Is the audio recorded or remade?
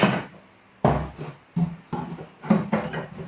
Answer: recorded